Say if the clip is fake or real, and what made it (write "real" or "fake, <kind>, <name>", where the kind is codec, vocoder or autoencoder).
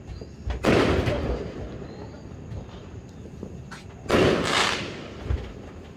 real